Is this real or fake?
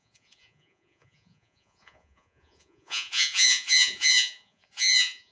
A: fake